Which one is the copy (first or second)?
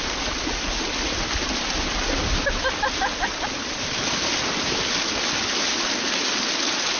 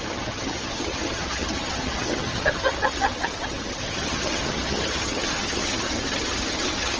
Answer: second